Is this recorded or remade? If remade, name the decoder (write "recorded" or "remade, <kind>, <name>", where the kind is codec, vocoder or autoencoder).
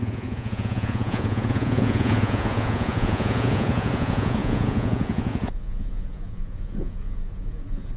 remade, vocoder, Vocos